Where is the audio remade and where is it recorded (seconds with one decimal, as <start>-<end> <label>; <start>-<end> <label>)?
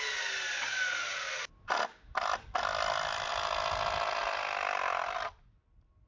0.0-6.1 recorded